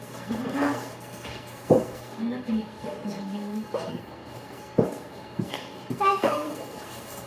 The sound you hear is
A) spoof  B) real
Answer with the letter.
A